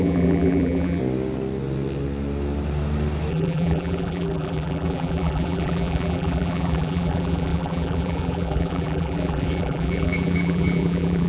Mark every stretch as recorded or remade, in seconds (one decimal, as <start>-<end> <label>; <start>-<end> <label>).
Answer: 0.0-1.0 remade; 1.0-3.3 recorded; 3.3-11.3 remade